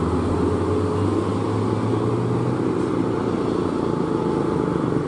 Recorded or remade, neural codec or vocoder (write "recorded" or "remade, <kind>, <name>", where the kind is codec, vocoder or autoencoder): recorded